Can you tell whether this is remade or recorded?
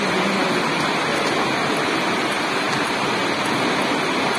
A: recorded